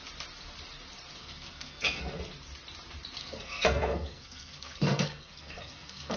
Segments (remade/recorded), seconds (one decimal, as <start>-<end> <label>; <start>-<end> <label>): 0.0-1.2 recorded; 1.2-2.2 remade; 2.2-3.2 recorded; 3.2-6.2 remade